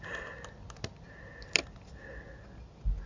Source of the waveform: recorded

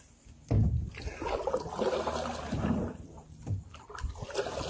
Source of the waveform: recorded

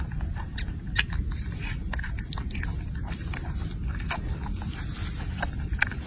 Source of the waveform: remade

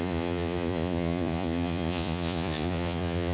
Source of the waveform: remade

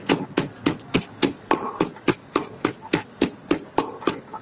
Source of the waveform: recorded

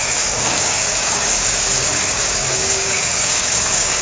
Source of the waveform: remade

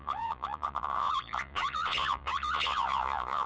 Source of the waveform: remade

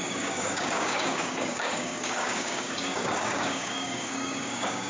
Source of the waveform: remade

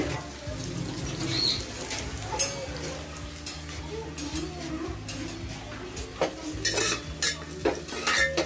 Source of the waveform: recorded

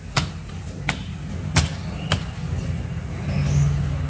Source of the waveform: recorded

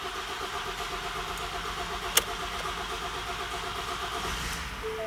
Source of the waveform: recorded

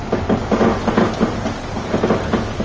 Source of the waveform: recorded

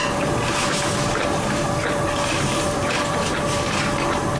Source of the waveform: remade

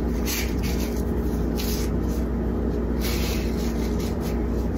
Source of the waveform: recorded